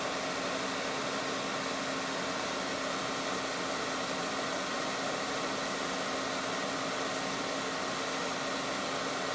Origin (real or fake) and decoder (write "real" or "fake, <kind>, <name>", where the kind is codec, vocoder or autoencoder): real